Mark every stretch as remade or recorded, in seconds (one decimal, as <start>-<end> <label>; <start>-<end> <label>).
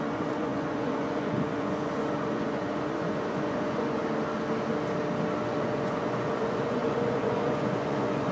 0.0-4.0 remade; 4.0-5.4 recorded; 5.4-8.3 remade